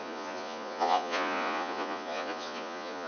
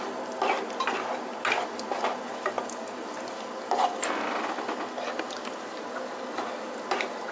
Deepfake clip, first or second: first